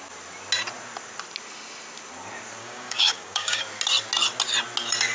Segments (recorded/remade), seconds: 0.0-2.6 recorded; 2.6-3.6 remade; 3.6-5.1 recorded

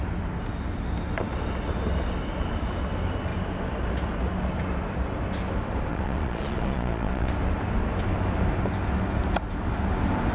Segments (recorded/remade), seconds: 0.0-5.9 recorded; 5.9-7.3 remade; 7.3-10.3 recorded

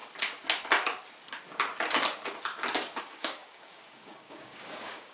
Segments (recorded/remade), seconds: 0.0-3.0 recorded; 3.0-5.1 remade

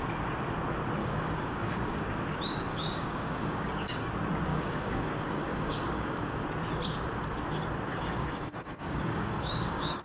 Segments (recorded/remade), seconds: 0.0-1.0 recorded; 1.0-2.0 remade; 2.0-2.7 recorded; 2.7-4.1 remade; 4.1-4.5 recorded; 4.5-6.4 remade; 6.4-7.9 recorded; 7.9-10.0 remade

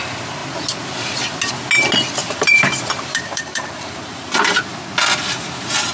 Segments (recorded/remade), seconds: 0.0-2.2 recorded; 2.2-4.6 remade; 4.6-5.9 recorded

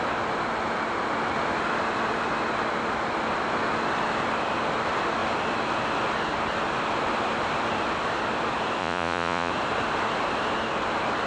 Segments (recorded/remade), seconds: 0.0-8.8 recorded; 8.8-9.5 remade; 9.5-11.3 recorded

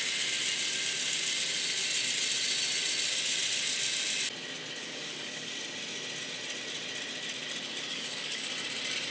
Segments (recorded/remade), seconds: 0.0-4.8 recorded; 4.8-5.5 remade; 5.5-7.9 recorded; 7.9-8.5 remade; 8.5-9.1 recorded